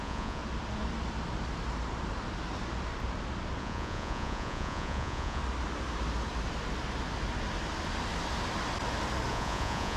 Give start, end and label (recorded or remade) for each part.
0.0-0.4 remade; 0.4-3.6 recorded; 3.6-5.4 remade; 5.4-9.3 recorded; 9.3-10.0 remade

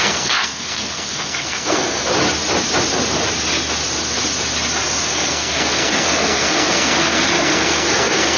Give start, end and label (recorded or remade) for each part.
0.0-2.1 remade; 2.1-5.0 recorded; 5.0-8.4 remade

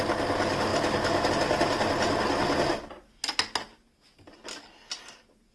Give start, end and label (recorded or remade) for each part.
0.0-5.5 recorded

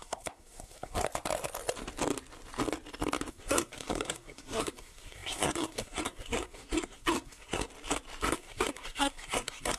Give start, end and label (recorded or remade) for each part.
0.0-1.1 remade; 1.1-3.3 recorded; 3.3-7.7 remade; 7.7-8.2 recorded; 8.2-9.8 remade

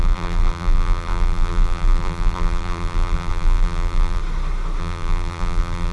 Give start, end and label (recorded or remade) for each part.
0.0-4.2 remade; 4.2-4.8 recorded; 4.8-5.9 remade

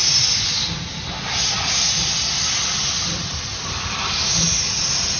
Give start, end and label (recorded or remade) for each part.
0.0-5.2 recorded